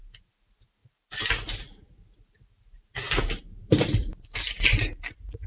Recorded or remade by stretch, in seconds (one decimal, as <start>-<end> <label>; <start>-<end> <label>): 0.0-5.5 recorded

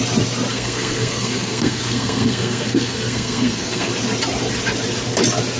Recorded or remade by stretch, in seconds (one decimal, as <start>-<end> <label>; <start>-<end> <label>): 0.0-0.5 recorded; 0.5-3.9 remade; 3.9-5.6 recorded